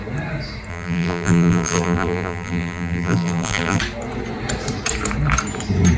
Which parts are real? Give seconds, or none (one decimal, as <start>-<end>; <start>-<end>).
0.0-0.7; 3.8-6.0